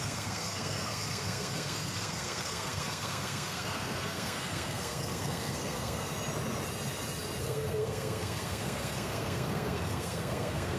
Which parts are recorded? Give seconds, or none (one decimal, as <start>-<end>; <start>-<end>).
6.1-7.4